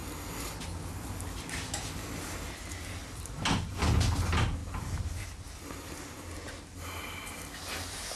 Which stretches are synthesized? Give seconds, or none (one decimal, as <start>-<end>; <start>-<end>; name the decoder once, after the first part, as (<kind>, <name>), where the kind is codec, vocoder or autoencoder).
3.0-3.8 (vocoder, BigVGAN v2); 4.6-6.0

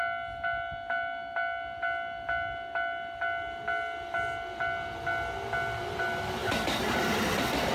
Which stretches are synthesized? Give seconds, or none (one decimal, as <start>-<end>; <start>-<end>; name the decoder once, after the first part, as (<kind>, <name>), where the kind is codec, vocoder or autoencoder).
none